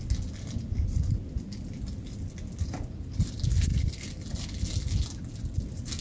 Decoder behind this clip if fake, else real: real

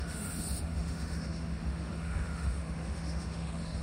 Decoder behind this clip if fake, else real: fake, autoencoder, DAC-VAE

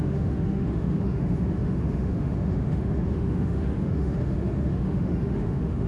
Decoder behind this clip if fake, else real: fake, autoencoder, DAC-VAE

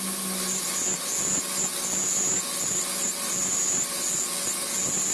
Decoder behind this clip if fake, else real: real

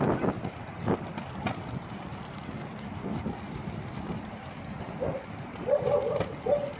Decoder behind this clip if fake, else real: real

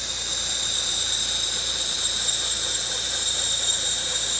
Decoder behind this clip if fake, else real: fake, vocoder, BigVGAN v2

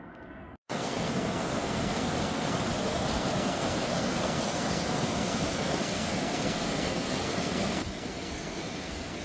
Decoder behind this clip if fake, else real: fake, codec, SNAC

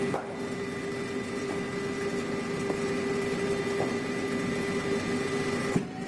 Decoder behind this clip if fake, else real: real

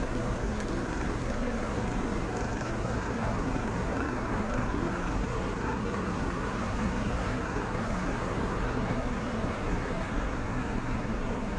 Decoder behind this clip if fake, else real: fake, codec, SNAC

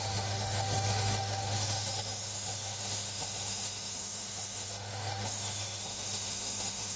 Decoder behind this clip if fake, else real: fake, autoencoder, DAC-VAE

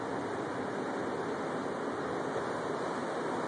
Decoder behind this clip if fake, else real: real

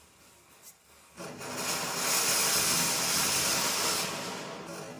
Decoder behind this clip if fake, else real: real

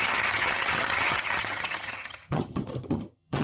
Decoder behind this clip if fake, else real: fake, vocoder, HiFi-GAN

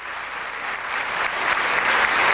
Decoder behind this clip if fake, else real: real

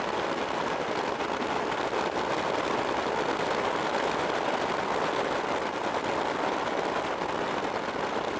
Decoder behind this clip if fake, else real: real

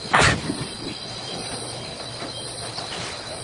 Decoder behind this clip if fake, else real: fake, vocoder, BigVGAN v2